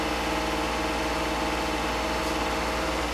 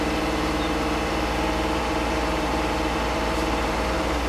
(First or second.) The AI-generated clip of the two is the second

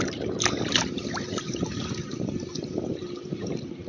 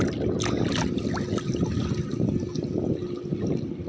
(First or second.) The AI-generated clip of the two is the first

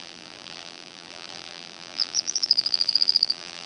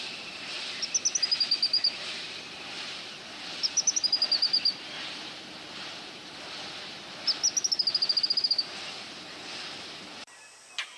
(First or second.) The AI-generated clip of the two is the first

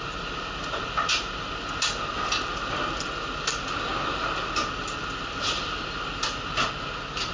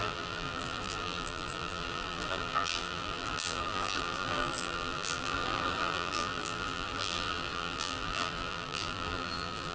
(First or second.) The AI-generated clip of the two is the second